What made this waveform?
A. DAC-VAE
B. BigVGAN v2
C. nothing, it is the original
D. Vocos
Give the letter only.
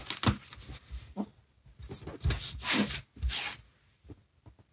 C